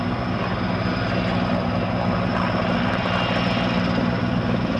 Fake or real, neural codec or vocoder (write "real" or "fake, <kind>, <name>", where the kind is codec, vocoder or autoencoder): real